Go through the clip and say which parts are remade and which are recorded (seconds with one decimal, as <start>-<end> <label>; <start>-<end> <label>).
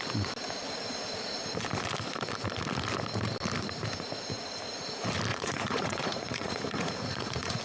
0.0-5.3 recorded; 5.3-7.6 remade